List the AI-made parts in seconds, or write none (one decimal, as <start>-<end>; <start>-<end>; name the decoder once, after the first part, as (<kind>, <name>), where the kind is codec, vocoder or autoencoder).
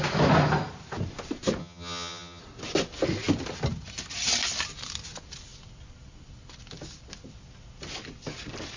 1.6-2.4 (vocoder, HiFi-GAN)